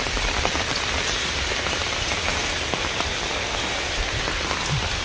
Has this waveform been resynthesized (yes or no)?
no